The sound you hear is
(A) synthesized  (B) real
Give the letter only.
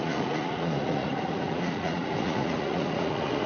A